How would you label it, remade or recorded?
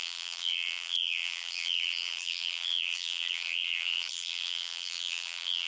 remade